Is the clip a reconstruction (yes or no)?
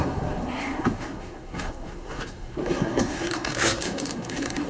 yes